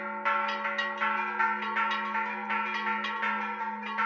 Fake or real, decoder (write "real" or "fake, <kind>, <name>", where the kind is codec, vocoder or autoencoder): real